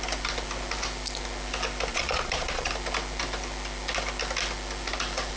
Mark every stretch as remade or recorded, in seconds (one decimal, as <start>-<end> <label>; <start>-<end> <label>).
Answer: 0.0-1.9 recorded; 1.9-2.7 remade; 2.7-5.4 recorded